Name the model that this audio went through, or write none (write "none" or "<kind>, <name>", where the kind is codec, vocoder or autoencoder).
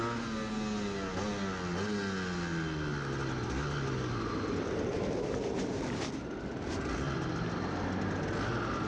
none